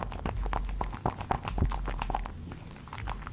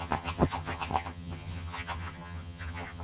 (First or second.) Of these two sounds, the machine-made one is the second